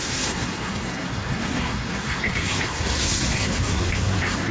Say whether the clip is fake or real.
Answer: fake